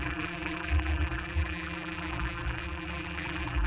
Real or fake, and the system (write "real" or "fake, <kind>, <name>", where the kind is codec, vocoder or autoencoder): fake, vocoder, BigVGAN v2